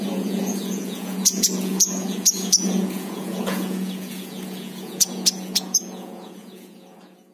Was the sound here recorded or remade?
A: remade